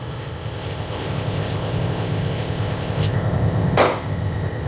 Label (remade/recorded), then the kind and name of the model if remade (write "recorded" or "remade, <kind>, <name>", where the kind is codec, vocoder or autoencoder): remade, codec, ZipCodec